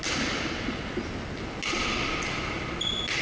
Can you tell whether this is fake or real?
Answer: real